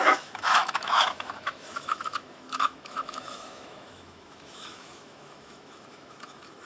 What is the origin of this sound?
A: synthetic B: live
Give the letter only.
A